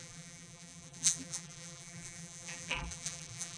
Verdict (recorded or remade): remade